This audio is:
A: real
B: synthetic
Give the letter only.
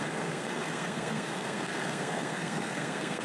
B